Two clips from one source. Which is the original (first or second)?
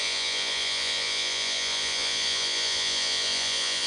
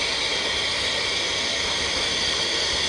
second